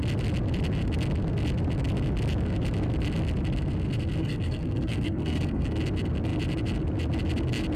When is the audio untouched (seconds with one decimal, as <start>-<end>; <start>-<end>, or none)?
0.0-4.2; 5.8-7.8